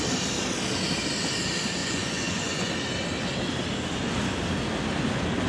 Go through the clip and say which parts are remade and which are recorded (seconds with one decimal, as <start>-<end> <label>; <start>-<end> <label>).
0.0-1.8 recorded; 1.8-2.7 remade; 2.7-5.5 recorded